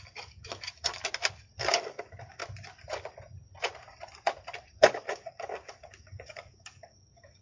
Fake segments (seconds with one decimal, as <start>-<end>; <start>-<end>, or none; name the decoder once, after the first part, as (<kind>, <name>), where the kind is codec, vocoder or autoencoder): 0.0-1.0 (codec, DAC); 1.7-2.4; 4.7-7.4